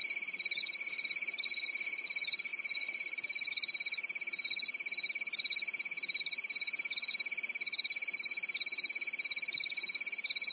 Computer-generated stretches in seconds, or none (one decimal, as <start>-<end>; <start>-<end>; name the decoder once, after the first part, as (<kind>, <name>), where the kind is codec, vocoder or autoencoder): 2.5-3.5 (vocoder, BigVGAN v2)